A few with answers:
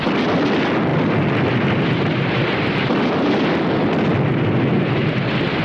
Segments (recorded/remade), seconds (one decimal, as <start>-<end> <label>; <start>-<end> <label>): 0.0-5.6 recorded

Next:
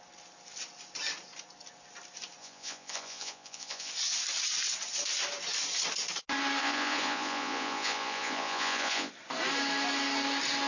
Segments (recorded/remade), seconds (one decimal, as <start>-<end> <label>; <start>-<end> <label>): 0.0-2.4 recorded; 2.4-3.9 remade; 3.9-6.6 recorded; 6.6-9.1 remade; 9.1-10.7 recorded

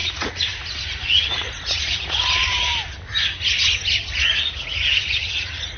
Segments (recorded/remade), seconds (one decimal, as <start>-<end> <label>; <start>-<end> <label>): 0.0-2.7 remade; 2.7-4.1 recorded; 4.1-5.8 remade